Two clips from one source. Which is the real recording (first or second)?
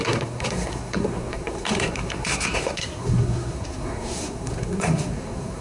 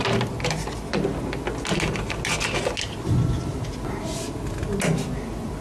second